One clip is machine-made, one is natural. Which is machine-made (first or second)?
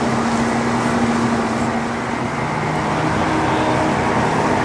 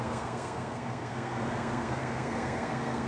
second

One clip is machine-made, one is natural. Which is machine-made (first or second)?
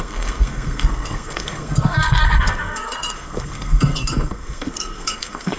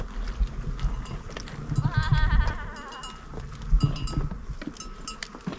first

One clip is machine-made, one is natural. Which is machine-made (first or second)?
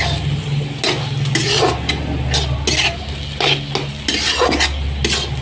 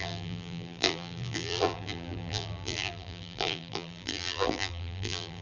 second